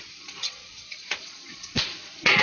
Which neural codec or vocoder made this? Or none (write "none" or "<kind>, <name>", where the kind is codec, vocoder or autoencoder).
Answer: vocoder, Vocos